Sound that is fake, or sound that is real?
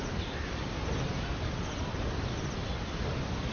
real